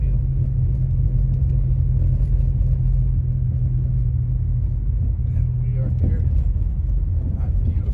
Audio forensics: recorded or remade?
recorded